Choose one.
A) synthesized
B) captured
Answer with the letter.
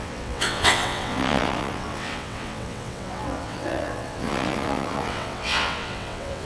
A